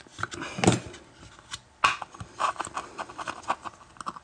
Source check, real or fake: real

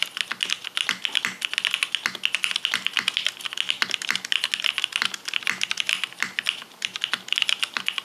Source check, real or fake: real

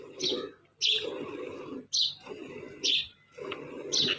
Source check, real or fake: real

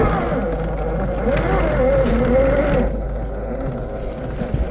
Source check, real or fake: real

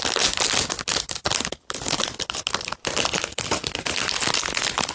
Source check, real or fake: real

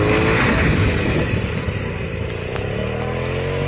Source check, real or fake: real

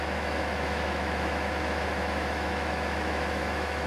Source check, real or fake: fake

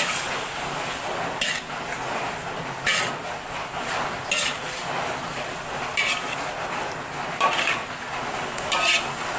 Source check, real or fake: real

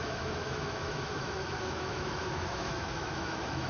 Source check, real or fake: fake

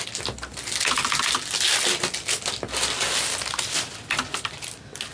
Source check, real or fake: real